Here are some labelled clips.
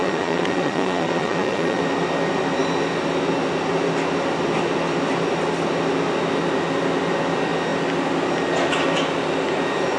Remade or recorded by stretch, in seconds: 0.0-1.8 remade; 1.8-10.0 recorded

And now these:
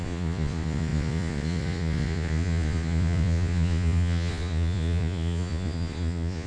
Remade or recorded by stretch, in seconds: 0.0-6.5 remade

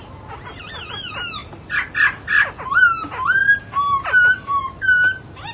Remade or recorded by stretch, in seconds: 0.0-5.5 recorded